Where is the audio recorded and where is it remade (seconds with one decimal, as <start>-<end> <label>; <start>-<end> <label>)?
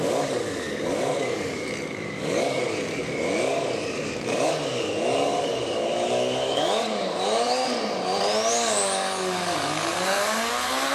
0.0-7.6 remade; 7.6-8.5 recorded; 8.5-10.9 remade